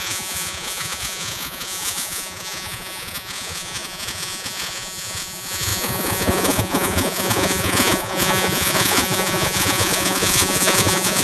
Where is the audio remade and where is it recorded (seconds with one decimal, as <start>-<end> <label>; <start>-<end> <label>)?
0.0-11.2 remade